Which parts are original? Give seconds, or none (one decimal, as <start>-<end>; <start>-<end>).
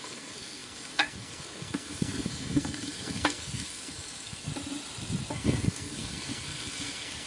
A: 4.5-5.3